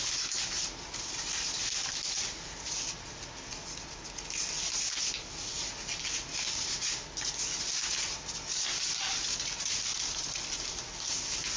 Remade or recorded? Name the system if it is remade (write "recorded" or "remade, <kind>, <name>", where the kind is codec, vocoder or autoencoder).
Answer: recorded